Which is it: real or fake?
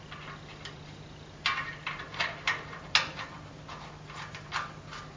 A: real